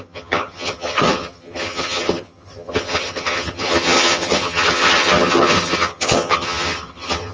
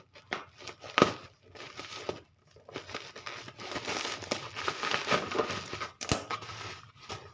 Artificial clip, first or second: first